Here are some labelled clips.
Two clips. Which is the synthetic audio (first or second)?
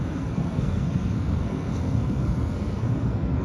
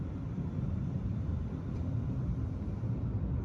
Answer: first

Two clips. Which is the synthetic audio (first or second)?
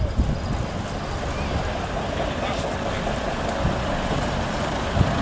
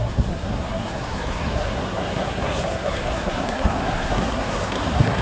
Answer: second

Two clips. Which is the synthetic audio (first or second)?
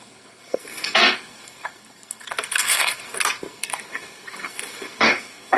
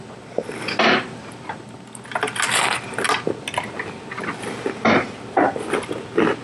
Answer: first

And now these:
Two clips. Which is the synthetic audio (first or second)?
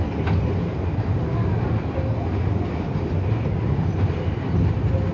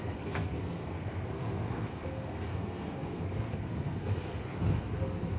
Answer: second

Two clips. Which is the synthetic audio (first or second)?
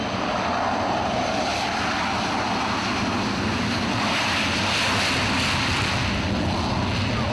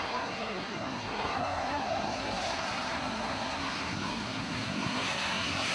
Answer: second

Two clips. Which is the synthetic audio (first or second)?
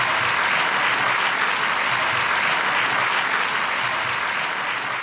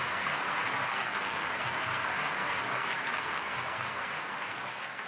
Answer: second